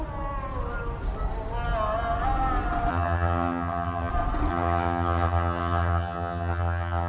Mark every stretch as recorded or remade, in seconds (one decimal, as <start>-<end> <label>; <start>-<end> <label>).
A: 0.0-2.9 recorded; 2.9-4.1 remade; 4.1-4.5 recorded; 4.5-7.1 remade